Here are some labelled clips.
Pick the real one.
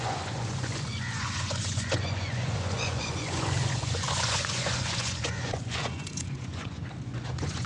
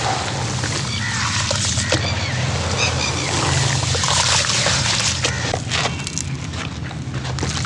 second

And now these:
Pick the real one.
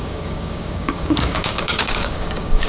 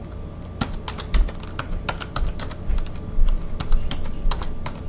second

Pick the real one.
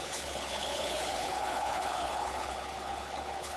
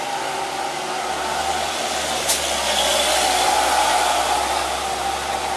second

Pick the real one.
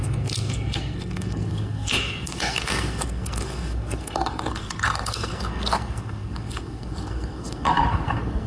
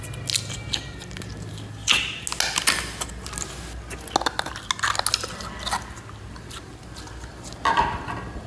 second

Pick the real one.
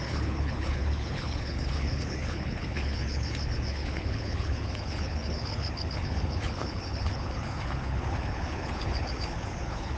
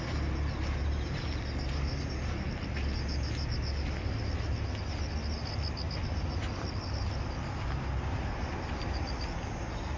second